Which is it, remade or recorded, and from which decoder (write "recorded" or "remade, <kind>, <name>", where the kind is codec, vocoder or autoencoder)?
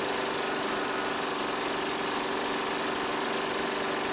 recorded